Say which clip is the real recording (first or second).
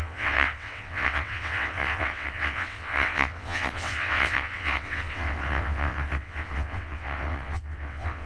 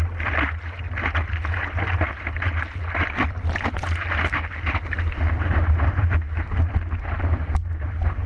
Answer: second